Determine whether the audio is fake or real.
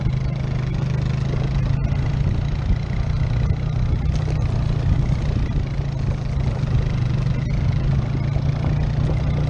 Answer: real